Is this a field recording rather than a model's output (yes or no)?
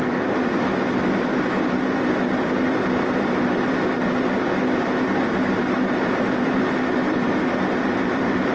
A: no